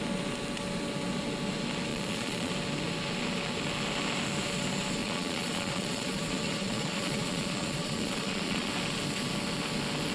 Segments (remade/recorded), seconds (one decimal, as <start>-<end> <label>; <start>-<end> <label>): 0.0-1.9 recorded; 1.9-2.5 remade; 2.5-5.0 recorded; 5.0-8.7 remade; 8.7-10.1 recorded